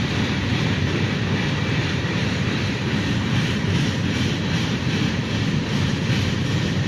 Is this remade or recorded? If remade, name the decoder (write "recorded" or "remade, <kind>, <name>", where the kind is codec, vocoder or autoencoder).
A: remade, vocoder, BigVGAN v2